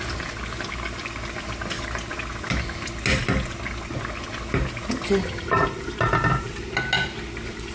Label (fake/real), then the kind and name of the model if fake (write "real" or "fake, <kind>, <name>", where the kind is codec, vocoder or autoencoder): real